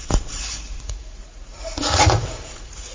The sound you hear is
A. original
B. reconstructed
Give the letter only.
B